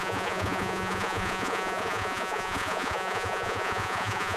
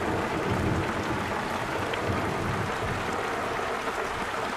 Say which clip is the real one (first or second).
second